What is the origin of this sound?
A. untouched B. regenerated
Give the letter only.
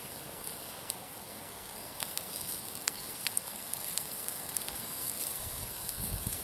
B